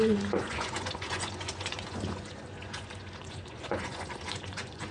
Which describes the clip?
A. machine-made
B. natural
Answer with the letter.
A